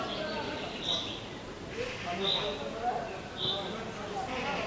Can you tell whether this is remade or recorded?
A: recorded